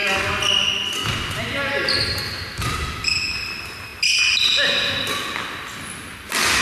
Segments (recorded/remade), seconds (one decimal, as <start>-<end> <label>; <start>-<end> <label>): 0.0-6.6 recorded